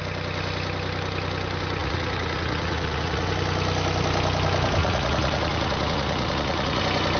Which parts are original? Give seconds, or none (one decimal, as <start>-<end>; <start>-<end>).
0.0-1.8; 3.3-4.8; 6.8-7.2